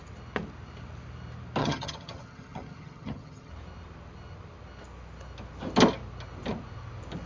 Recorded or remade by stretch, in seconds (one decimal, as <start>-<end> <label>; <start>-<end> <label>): 0.0-1.6 recorded; 1.6-3.5 remade; 3.5-7.3 recorded